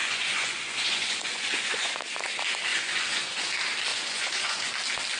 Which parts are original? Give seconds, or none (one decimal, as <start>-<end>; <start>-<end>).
1.9-2.7; 3.5-3.9; 4.7-5.2